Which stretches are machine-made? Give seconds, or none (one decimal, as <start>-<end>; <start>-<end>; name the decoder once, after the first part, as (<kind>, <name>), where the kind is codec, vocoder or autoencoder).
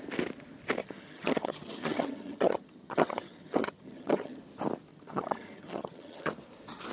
0.8-4.4 (vocoder, HiFi-GAN); 4.9-6.3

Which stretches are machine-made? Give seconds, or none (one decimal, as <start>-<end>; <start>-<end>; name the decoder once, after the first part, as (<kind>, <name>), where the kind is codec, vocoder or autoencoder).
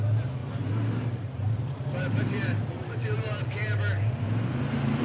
0.4-3.4 (vocoder, BigVGAN v2)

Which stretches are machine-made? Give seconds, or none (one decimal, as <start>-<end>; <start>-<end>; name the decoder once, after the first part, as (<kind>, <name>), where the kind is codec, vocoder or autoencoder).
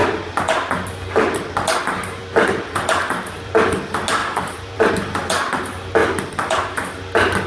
2.2-3.5 (vocoder, BigVGAN v2); 4.2-4.9; 6.0-6.7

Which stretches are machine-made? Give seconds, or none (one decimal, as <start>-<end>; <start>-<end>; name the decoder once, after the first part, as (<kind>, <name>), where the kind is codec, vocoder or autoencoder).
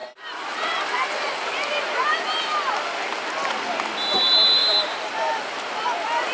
0.0-2.7 (vocoder, BigVGAN v2); 4.6-5.5